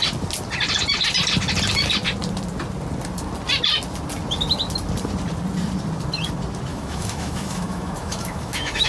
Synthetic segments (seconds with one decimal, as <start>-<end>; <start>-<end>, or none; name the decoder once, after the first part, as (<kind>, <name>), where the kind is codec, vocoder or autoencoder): 6.7-8.9 (autoencoder, DAC-VAE)